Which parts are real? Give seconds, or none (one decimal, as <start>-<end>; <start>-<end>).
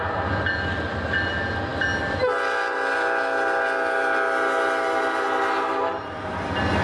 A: 0.0-6.8